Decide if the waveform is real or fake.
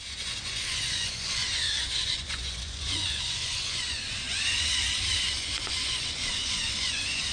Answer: fake